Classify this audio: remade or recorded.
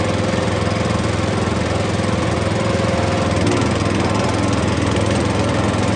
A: recorded